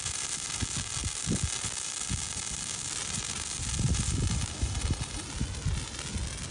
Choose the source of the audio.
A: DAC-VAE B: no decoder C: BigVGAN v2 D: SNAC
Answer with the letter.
B